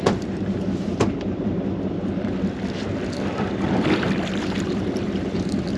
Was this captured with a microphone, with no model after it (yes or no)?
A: no